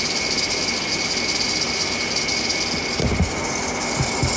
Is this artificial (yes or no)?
no